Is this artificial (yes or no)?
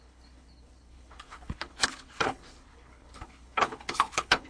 yes